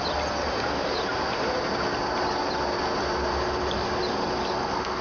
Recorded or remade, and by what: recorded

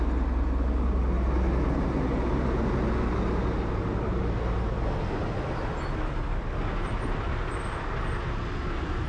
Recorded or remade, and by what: recorded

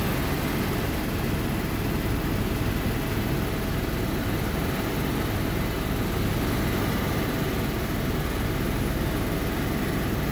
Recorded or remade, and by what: recorded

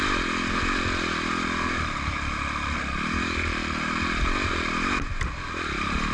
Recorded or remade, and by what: remade, vocoder, BigVGAN v2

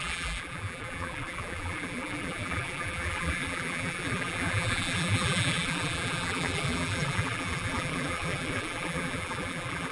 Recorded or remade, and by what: remade, vocoder, BigVGAN v2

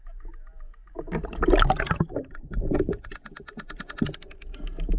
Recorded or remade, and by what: recorded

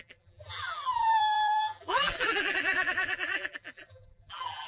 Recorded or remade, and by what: remade, vocoder, BigVGAN v2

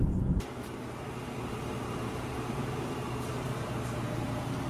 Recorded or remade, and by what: remade, vocoder, BigVGAN v2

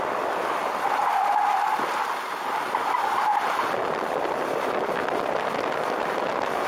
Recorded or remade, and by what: recorded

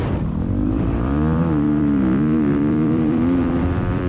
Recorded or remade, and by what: remade, vocoder, BigVGAN v2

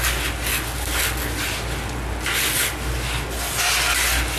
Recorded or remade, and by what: recorded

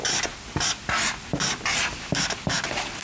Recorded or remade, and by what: recorded